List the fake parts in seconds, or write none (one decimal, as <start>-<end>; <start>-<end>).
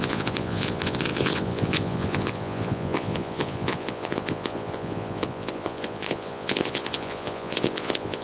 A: 0.0-8.2